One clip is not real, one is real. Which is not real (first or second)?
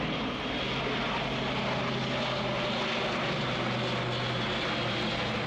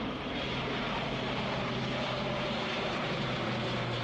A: second